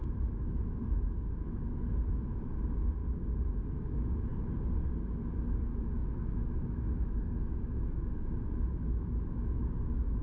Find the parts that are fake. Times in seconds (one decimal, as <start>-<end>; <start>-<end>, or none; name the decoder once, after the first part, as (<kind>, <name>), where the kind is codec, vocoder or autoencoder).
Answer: 0.0-3.0 (autoencoder, DAC-VAE); 3.7-4.3; 5.2-10.2